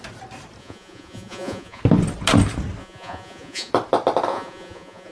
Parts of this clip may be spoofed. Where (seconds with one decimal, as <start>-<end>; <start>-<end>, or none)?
0.6-1.8; 2.8-3.7; 4.3-5.1